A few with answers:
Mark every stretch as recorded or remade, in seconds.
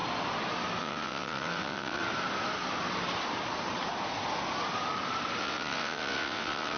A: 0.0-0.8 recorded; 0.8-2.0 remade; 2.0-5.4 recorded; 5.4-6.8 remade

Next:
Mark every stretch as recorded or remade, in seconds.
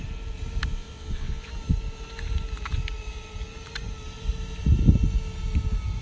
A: 0.0-0.7 recorded; 0.7-1.5 remade; 1.5-6.0 recorded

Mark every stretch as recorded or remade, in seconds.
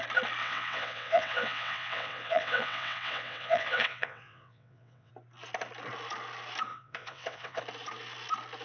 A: 0.0-0.4 recorded; 0.4-5.1 remade; 5.1-6.7 recorded; 6.7-7.6 remade; 7.6-8.6 recorded